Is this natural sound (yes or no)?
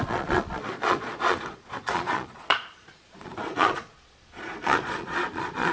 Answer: no